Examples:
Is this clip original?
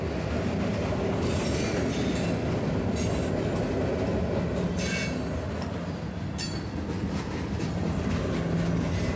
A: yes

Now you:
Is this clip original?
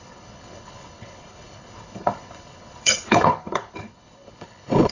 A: no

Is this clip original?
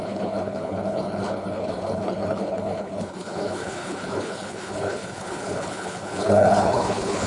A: no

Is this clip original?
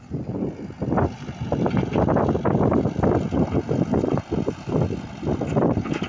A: yes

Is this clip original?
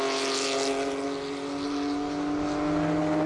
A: yes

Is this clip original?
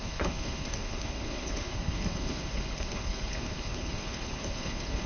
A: no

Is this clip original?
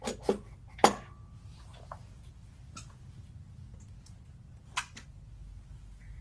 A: yes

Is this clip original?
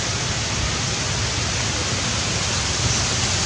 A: yes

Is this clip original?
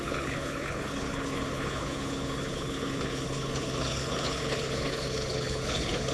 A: no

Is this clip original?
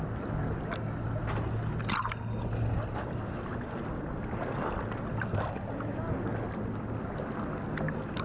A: yes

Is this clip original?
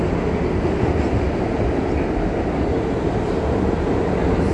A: yes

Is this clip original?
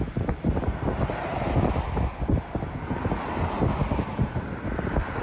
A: yes